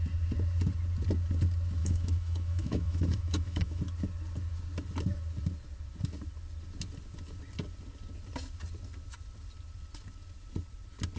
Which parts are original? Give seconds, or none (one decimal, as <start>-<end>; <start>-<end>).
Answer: 0.0-1.8; 3.8-11.2